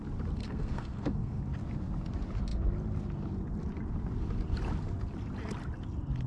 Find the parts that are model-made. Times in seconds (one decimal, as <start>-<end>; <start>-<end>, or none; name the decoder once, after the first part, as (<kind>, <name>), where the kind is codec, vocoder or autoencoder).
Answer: 0.4-1.4 (codec, SNAC)